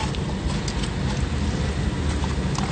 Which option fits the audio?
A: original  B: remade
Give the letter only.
A